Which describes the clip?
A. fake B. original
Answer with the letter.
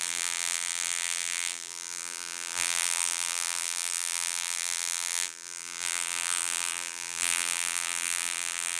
A